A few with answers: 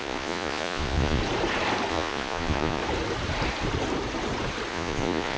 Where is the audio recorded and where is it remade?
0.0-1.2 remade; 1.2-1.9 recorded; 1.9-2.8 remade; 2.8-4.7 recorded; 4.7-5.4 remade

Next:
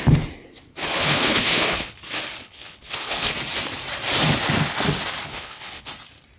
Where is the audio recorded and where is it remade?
0.0-0.8 recorded; 0.8-2.0 remade; 2.0-2.4 recorded; 2.4-3.3 remade; 3.3-5.3 recorded; 5.3-5.9 remade; 5.9-6.4 recorded

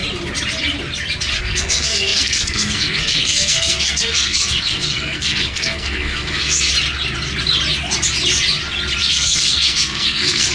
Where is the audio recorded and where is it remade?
0.0-1.4 recorded; 1.4-6.7 remade; 6.7-9.0 recorded; 9.0-10.5 remade

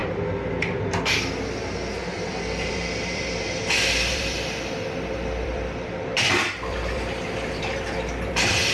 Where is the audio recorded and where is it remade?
0.0-2.6 recorded; 2.6-3.6 remade; 3.6-4.1 recorded; 4.1-8.7 remade